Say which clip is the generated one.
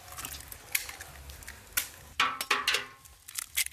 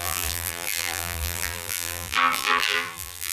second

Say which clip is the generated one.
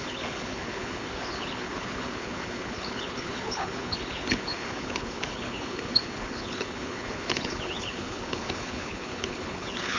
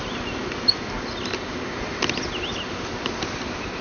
first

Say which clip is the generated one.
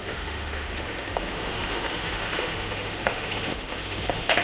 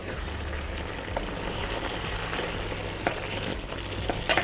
first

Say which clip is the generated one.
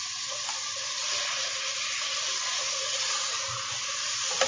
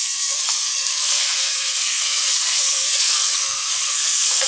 second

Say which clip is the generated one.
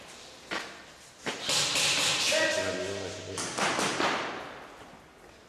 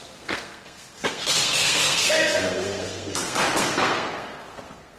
second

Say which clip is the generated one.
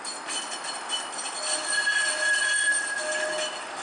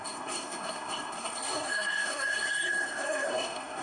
second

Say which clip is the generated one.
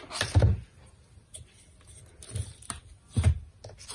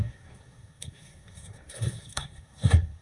second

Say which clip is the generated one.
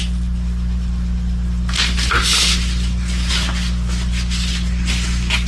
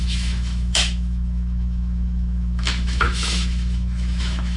second